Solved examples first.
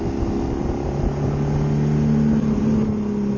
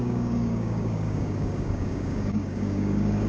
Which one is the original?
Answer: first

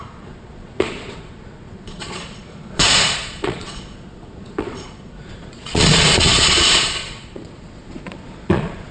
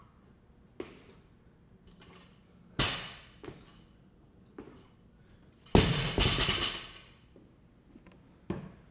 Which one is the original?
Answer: second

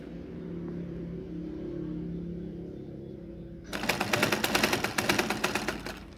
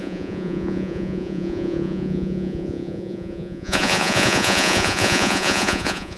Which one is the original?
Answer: first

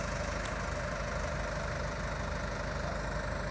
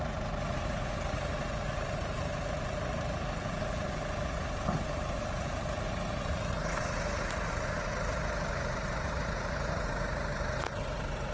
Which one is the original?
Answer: first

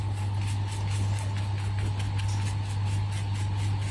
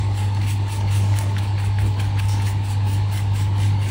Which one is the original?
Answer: first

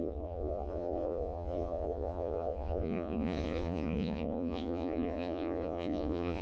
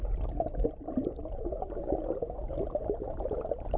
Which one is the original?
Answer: second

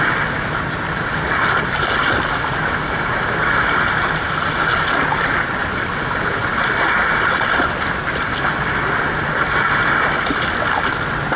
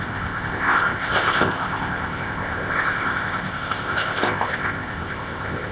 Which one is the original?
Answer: first